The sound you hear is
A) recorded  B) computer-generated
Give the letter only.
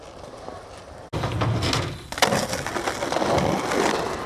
A